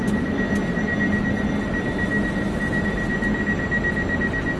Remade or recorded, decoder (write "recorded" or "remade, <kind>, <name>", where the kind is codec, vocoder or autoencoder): recorded